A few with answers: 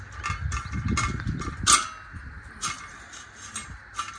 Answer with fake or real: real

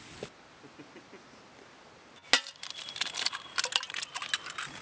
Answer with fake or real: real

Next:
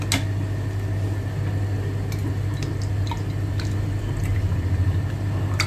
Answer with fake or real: real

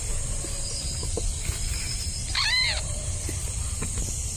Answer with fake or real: fake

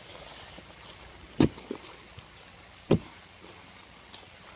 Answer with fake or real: real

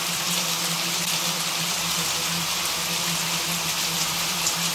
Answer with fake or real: real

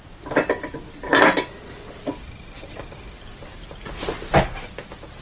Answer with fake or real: real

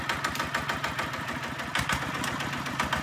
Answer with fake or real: real